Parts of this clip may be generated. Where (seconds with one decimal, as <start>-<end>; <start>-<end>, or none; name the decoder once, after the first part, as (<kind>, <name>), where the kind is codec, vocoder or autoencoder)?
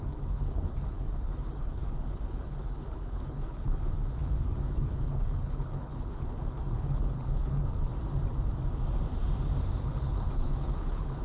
0.0-7.9 (codec, HILCodec); 9.8-11.2